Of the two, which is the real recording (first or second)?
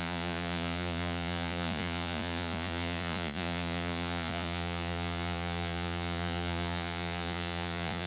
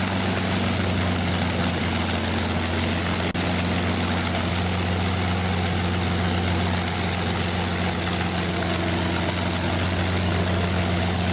second